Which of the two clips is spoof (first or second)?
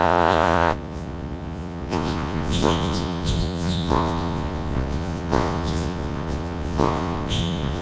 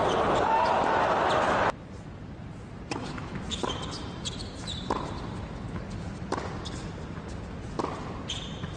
first